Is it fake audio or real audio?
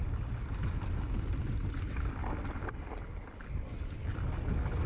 real